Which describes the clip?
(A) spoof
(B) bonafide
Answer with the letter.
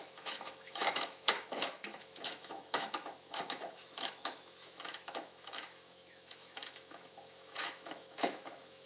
A